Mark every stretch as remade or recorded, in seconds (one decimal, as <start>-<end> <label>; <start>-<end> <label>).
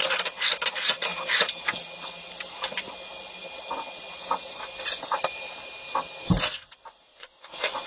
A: 0.0-7.1 recorded; 7.1-7.9 remade